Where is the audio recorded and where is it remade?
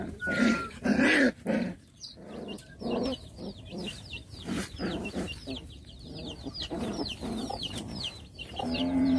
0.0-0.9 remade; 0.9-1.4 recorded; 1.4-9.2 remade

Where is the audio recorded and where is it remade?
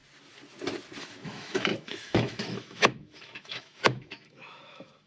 0.0-1.0 recorded; 1.0-5.1 remade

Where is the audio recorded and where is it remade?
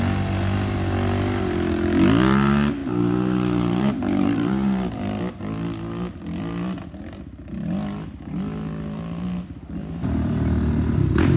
0.0-2.8 recorded; 2.8-5.2 remade; 5.2-11.4 recorded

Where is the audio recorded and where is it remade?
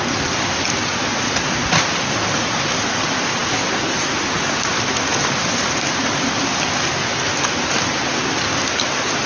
0.0-9.3 recorded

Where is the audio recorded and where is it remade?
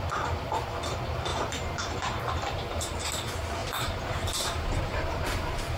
0.0-1.3 recorded; 1.3-3.1 remade; 3.1-3.6 recorded; 3.6-5.2 remade; 5.2-5.8 recorded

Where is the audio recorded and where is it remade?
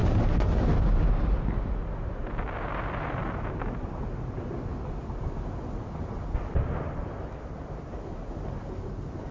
0.0-9.3 recorded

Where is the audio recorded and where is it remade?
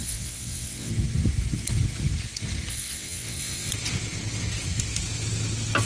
0.0-0.9 remade; 0.9-2.7 recorded; 2.7-3.7 remade; 3.7-5.9 recorded